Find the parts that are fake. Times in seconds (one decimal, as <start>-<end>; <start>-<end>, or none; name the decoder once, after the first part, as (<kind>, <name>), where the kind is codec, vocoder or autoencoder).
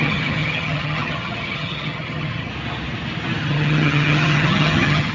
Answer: 0.0-2.5 (vocoder, HiFi-GAN); 3.4-5.1